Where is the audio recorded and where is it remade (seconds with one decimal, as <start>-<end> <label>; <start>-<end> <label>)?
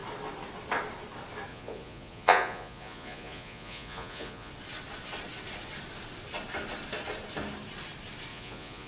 0.0-1.5 recorded; 1.5-4.5 remade; 4.5-8.3 recorded; 8.3-8.9 remade